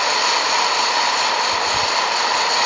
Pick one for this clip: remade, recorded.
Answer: recorded